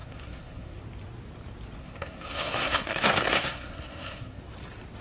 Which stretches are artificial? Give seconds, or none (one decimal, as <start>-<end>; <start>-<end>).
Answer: 0.0-0.8; 1.8-4.4